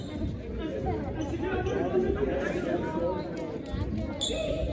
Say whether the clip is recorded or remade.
recorded